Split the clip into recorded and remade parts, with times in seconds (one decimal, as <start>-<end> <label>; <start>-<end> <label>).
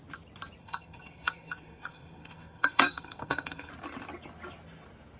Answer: 0.0-0.6 recorded; 0.6-3.7 remade; 3.7-5.2 recorded